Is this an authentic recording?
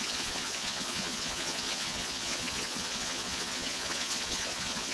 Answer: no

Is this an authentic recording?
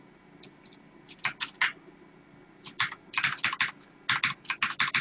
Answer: yes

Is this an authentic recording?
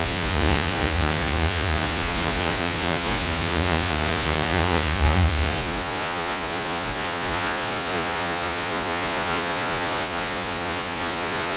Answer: no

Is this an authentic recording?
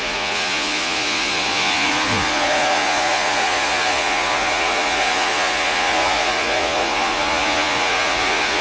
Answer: no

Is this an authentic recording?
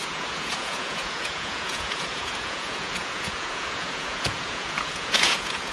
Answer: no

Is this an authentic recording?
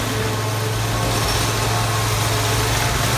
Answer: yes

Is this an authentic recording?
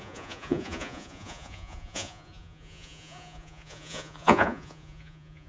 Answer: no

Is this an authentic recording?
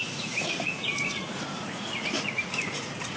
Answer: no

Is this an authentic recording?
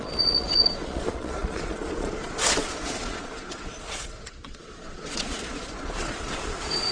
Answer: no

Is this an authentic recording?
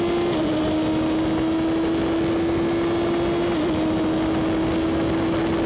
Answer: yes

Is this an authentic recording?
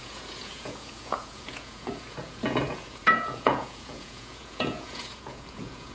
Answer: no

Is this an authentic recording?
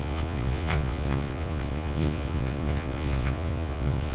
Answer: no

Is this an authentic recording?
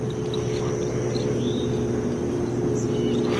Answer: yes